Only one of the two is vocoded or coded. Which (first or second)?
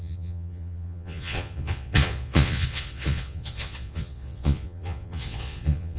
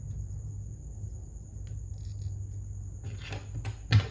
first